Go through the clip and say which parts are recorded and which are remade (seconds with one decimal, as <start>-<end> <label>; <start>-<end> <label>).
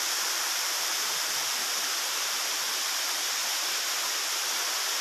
0.0-3.4 remade; 3.4-5.0 recorded